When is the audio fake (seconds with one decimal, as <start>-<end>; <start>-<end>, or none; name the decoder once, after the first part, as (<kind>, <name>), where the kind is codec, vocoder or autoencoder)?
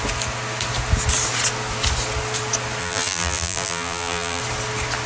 2.8-4.4 (vocoder, BigVGAN v2)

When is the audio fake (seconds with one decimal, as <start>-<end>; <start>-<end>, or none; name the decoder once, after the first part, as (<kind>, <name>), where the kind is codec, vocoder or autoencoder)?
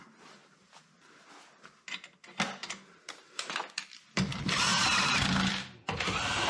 2.6-3.6 (vocoder, BigVGAN v2); 4.7-5.5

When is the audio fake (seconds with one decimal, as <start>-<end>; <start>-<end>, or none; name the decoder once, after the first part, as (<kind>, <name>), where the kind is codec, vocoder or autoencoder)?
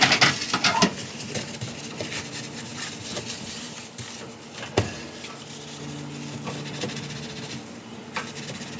0.9-2.3 (vocoder, BigVGAN v2); 2.7-4.1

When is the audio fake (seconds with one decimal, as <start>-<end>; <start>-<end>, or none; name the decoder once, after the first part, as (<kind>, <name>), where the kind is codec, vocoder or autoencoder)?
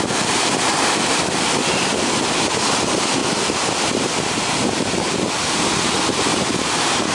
3.2-4.6 (vocoder, BigVGAN v2); 6.3-7.1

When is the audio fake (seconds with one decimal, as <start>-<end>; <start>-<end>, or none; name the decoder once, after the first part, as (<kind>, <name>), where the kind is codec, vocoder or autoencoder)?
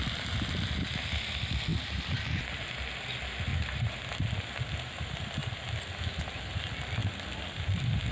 1.7-2.5 (vocoder, BigVGAN v2); 3.5-4.1; 5.4-6.0; 7.0-8.1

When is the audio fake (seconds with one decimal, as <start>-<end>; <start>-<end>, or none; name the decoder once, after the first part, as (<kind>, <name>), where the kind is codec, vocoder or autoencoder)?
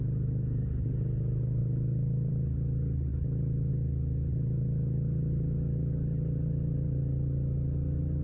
none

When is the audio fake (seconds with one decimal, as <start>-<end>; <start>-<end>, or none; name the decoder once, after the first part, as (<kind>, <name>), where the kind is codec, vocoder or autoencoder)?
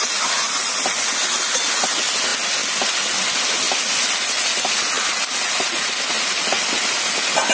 none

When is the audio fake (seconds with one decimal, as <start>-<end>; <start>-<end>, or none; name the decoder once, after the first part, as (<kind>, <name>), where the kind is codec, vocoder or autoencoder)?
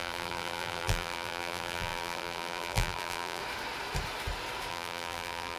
0.0-3.4 (vocoder, BigVGAN v2); 4.7-5.6